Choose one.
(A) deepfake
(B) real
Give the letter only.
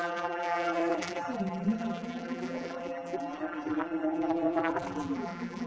A